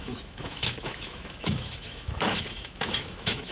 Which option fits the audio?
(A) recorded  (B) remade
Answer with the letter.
B